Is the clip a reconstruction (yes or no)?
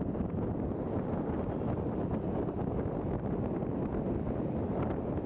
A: no